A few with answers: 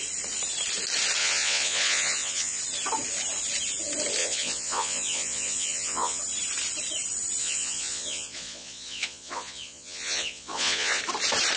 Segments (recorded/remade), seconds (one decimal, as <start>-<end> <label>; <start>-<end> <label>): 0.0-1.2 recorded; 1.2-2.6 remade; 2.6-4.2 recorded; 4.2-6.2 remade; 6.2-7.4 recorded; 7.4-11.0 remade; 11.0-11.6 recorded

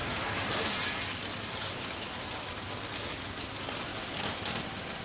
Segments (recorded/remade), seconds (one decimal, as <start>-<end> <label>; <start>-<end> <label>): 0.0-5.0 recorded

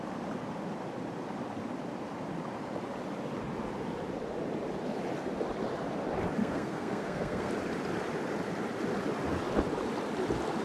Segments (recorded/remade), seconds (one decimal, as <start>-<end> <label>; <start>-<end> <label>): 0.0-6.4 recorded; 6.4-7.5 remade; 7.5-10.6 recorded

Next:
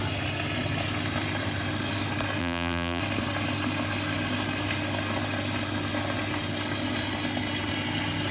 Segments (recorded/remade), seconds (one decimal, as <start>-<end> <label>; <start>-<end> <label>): 0.0-2.4 recorded; 2.4-3.0 remade; 3.0-8.3 recorded

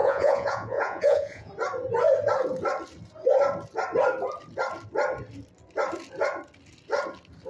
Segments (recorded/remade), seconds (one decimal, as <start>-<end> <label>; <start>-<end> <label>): 0.0-1.5 remade; 1.5-7.5 recorded

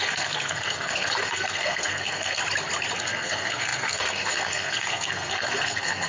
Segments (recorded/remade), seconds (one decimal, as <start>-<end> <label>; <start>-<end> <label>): 0.0-2.4 remade; 2.4-3.0 recorded; 3.0-6.1 remade

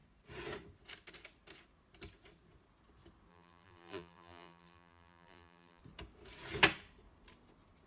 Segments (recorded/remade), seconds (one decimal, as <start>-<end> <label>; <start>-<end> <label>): 0.0-3.3 recorded; 3.3-5.8 remade; 5.8-7.9 recorded

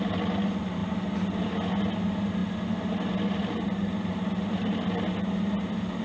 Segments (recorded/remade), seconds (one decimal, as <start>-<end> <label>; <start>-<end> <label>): 0.0-6.0 recorded